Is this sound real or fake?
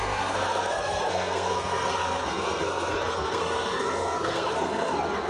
fake